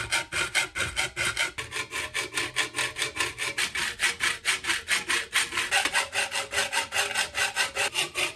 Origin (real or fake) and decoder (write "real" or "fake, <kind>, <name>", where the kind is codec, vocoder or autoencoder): real